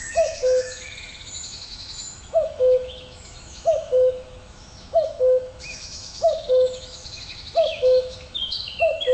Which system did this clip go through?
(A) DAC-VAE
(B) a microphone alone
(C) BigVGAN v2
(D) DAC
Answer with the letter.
A